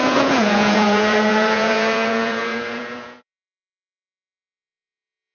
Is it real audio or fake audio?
fake